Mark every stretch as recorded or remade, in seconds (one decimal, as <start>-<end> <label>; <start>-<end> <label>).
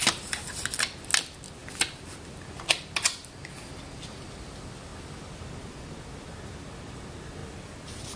0.0-8.2 recorded